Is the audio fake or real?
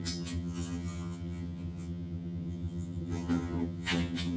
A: fake